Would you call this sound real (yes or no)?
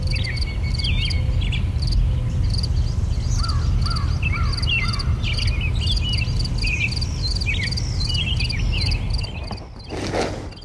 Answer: yes